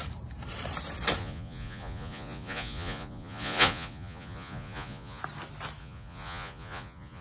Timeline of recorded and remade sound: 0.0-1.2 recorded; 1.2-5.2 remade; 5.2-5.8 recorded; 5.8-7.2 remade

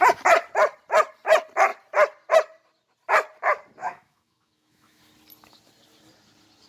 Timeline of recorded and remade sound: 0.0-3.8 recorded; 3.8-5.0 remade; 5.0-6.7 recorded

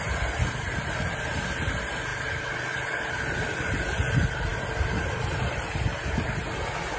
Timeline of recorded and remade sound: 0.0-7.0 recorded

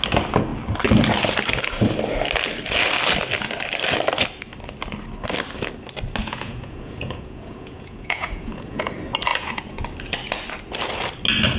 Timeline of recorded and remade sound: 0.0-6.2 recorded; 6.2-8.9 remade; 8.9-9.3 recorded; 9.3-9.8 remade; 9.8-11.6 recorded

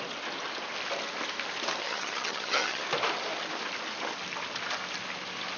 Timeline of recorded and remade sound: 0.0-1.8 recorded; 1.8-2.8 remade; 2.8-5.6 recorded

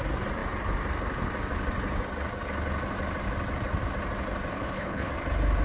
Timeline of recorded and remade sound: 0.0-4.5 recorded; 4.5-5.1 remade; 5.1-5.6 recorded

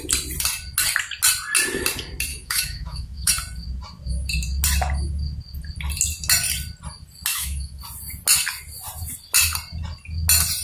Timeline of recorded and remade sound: 0.0-2.3 recorded; 2.3-3.3 remade; 3.3-7.3 recorded; 7.3-7.8 remade; 7.8-10.6 recorded